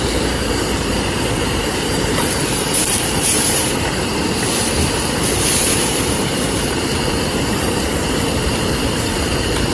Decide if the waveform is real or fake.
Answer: fake